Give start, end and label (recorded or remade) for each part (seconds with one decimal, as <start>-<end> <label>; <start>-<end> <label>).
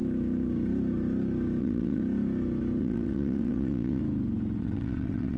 0.0-1.6 recorded; 1.6-2.0 remade; 2.0-2.8 recorded; 2.8-4.0 remade; 4.0-4.6 recorded; 4.6-5.4 remade